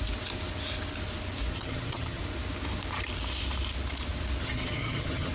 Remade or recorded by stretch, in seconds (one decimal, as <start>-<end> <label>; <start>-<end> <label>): 0.0-1.5 recorded; 1.5-2.2 remade; 2.2-4.4 recorded; 4.4-5.3 remade